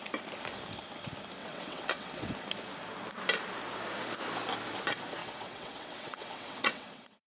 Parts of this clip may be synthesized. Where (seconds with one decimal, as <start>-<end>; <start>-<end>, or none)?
1.4-2.5; 5.2-7.3